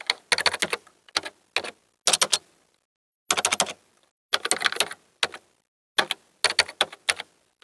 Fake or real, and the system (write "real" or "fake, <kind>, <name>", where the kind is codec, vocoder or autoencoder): real